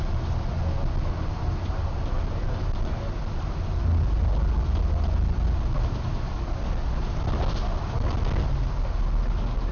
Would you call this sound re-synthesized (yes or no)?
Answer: no